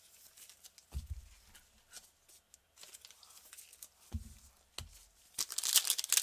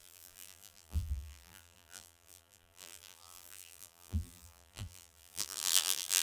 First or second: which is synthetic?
second